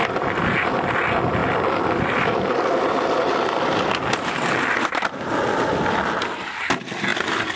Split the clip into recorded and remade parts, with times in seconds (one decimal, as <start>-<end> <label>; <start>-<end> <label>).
0.0-7.6 recorded